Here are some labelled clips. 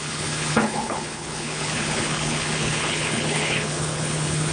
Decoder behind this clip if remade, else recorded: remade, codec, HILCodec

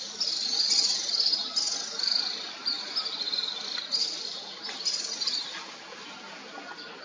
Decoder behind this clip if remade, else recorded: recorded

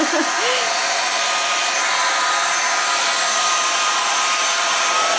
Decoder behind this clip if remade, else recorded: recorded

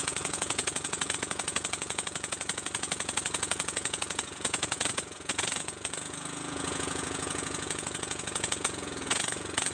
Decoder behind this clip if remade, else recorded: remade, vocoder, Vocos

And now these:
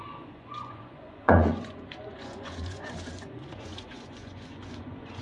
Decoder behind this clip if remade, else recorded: remade, vocoder, Vocos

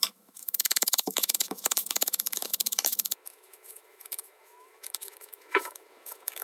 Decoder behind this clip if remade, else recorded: remade, autoencoder, DAC-VAE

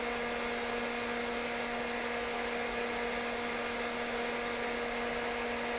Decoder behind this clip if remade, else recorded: recorded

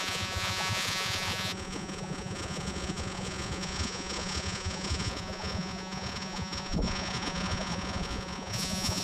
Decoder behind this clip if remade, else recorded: remade, vocoder, Vocos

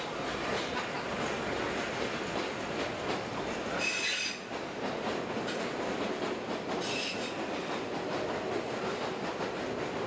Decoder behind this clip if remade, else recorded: recorded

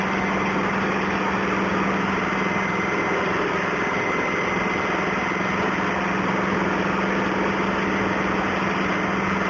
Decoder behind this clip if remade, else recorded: recorded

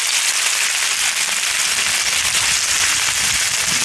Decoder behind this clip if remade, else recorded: recorded